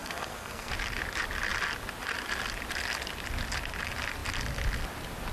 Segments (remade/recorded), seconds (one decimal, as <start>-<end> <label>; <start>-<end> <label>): 0.0-0.7 remade; 0.7-5.3 recorded